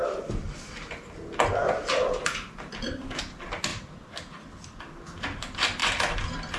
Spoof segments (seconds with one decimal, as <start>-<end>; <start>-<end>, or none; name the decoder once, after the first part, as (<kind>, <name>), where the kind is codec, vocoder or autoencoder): 1.6-3.2 (vocoder, BigVGAN v2); 3.7-4.8; 5.8-6.6